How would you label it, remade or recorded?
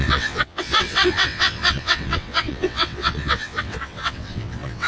remade